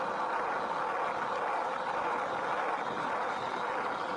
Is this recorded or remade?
recorded